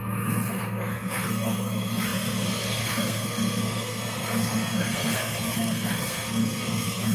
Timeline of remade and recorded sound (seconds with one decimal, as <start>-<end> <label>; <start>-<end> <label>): 0.0-7.1 remade